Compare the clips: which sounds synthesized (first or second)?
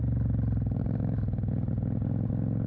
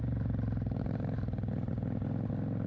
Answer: second